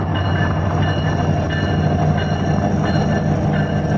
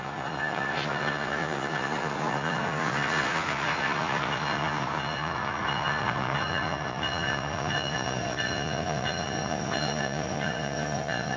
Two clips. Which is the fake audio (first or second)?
second